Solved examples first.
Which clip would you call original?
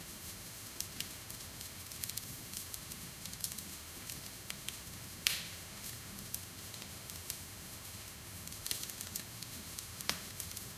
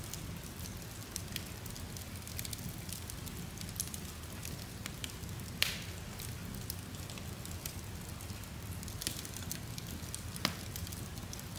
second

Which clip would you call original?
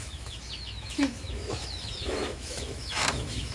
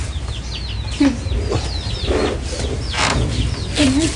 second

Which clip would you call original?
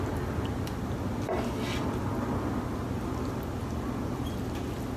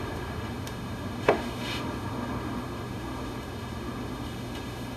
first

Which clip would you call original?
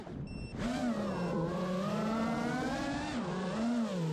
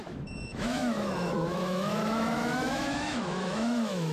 first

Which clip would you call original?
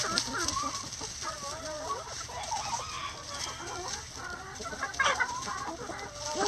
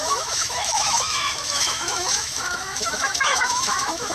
first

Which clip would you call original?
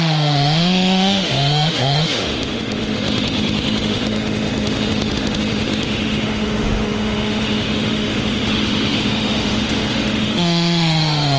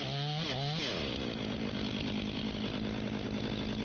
second